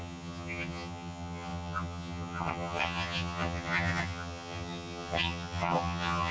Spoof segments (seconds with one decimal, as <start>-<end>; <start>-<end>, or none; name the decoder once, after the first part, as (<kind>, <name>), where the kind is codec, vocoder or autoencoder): 0.0-6.3 (vocoder, HiFi-GAN)